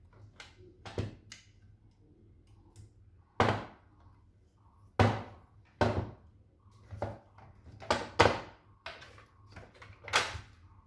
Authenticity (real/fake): real